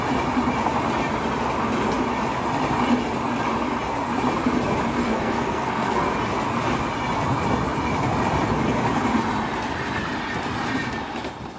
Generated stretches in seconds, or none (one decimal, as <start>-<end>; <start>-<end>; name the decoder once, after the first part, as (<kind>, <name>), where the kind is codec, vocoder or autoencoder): 5.0-6.1 (codec, SNAC)